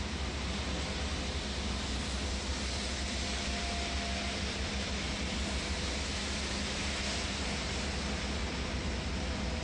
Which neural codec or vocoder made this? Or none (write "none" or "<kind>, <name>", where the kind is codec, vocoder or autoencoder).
none